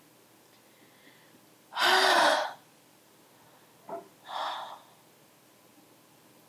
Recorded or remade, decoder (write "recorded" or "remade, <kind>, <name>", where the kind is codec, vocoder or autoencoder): recorded